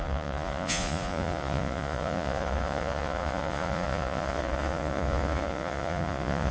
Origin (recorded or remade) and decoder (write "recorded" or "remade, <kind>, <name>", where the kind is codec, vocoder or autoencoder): remade, vocoder, Vocos